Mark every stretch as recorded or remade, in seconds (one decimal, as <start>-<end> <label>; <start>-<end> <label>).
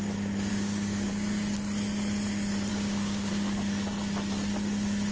0.0-0.5 recorded; 0.5-1.1 remade; 1.1-2.7 recorded; 2.7-3.3 remade; 3.3-5.1 recorded